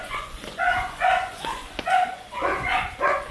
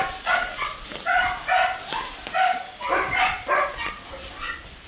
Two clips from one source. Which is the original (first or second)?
second